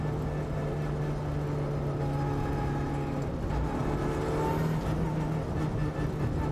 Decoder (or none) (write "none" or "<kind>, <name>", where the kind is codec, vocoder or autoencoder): none